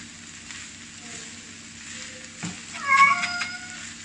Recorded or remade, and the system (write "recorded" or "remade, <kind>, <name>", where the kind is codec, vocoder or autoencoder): recorded